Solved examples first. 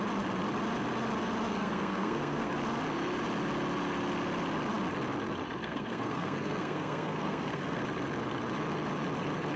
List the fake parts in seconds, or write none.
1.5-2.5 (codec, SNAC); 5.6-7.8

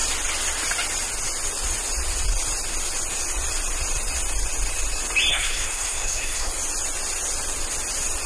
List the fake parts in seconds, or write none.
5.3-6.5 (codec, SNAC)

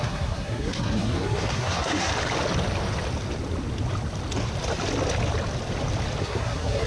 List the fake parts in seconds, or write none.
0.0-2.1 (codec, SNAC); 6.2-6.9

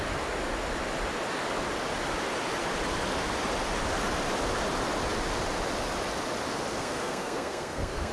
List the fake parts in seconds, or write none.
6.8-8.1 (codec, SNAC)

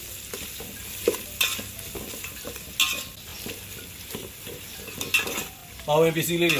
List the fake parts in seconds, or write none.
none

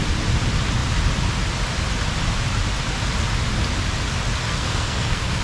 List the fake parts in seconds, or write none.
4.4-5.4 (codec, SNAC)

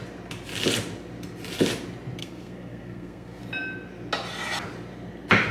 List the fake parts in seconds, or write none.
2.2-3.4 (codec, SNAC)

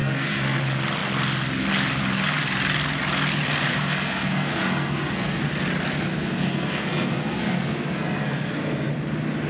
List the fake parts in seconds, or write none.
0.0-0.6 (codec, SNAC); 3.7-5.4; 6.1-8.9